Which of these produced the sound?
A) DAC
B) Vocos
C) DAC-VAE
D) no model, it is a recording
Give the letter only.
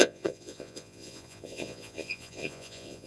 B